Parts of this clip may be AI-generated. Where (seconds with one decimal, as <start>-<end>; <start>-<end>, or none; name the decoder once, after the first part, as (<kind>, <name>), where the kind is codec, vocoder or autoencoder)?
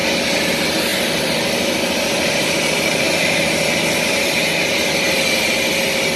0.0-0.5 (vocoder, BigVGAN v2); 0.9-4.6